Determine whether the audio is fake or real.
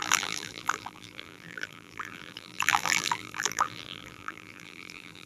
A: fake